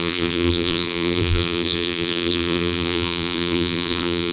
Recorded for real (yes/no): no